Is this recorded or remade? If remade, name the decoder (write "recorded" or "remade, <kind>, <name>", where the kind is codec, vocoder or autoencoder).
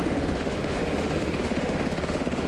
remade, autoencoder, DAC-VAE